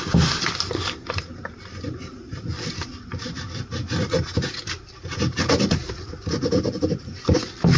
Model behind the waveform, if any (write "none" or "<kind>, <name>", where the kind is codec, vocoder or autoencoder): none